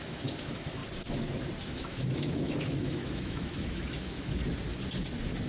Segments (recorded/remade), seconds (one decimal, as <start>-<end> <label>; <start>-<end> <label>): 0.0-0.8 remade; 0.8-1.6 recorded; 1.6-4.4 remade; 4.4-5.5 recorded